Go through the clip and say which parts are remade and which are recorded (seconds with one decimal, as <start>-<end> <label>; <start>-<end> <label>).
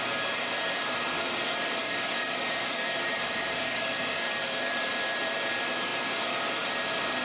0.0-1.8 recorded; 1.8-4.7 remade; 4.7-7.2 recorded